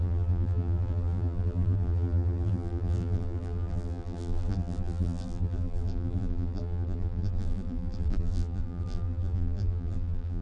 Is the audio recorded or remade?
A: remade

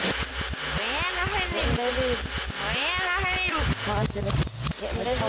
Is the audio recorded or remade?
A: recorded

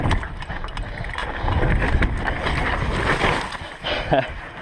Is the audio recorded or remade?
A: recorded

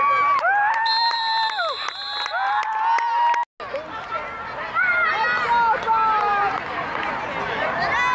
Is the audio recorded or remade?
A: recorded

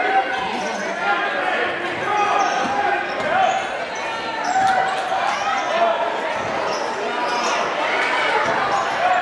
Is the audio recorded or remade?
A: recorded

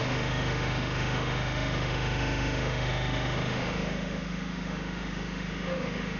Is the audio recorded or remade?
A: remade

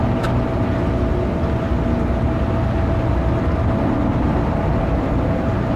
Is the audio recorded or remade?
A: recorded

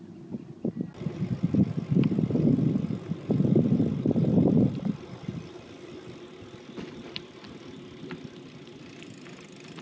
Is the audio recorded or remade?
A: recorded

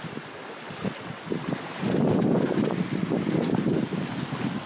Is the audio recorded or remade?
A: recorded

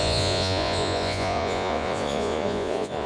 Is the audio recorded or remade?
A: remade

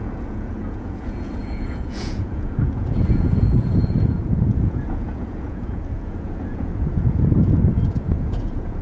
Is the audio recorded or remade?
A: remade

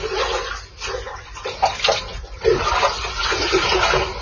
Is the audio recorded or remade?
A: recorded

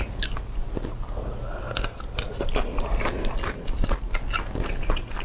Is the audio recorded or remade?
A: recorded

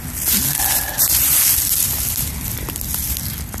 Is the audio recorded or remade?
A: recorded